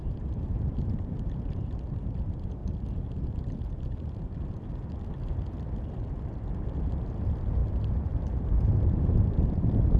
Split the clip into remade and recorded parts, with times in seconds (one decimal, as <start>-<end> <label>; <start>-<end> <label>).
0.0-2.6 remade; 2.6-6.9 recorded; 6.9-10.0 remade